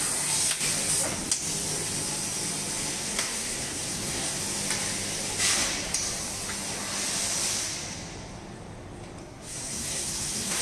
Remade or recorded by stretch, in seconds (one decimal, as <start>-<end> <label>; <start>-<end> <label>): 0.0-2.9 recorded; 2.9-4.4 remade; 4.4-9.2 recorded; 9.2-10.6 remade